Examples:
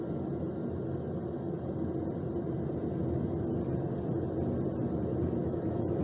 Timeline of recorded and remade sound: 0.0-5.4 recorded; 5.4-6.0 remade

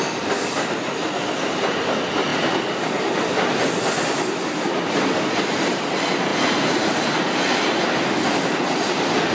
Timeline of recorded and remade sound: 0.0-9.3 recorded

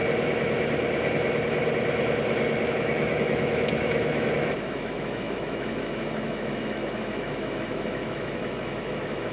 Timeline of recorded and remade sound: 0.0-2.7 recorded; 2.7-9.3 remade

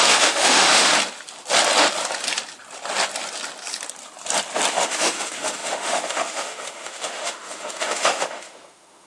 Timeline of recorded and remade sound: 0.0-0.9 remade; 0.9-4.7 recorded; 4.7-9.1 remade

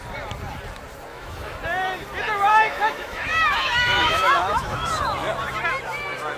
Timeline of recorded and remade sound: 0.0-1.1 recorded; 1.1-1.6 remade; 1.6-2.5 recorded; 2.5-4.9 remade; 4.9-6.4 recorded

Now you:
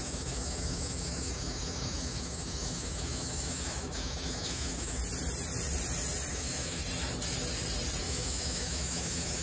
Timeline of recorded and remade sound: 0.0-5.0 remade; 5.0-6.3 recorded; 6.3-6.8 remade; 6.8-8.0 recorded; 8.0-9.4 remade

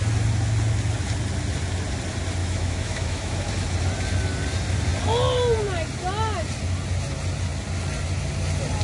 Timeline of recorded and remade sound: 0.0-2.4 recorded; 2.4-3.5 remade; 3.5-8.8 recorded